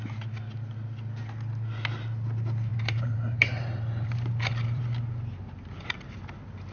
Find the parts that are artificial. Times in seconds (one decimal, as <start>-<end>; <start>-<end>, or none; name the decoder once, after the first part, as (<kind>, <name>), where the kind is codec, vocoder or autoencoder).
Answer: 2.7-5.0 (vocoder, BigVGAN v2)